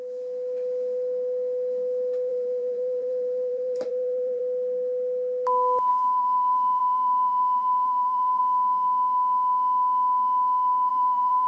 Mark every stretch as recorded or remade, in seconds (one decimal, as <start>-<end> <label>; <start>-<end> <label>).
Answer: 0.0-2.3 recorded; 2.3-4.4 remade; 4.4-5.9 recorded; 5.9-8.4 remade; 8.4-10.9 recorded; 10.9-11.5 remade